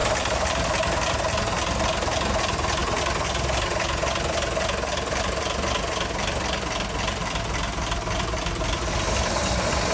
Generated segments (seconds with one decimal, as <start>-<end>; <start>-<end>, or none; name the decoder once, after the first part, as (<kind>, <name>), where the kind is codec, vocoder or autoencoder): none